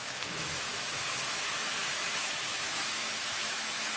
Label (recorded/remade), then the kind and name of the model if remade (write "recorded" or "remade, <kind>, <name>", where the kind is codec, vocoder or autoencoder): remade, autoencoder, DAC-VAE